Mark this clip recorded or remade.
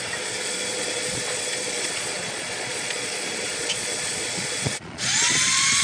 remade